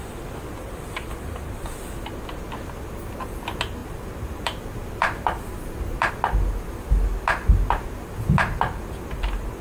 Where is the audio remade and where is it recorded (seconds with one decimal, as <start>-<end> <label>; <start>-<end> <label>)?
0.0-3.8 recorded; 3.8-6.1 remade; 6.1-9.6 recorded